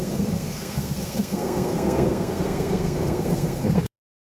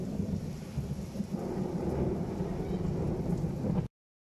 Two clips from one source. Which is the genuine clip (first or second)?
second